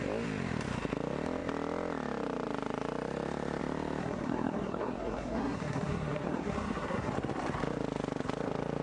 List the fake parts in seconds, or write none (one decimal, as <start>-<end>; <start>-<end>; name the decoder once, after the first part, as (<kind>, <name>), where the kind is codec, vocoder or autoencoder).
4.0-7.1 (codec, SNAC)